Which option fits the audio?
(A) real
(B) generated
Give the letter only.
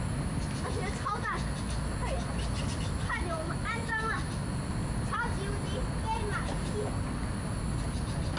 A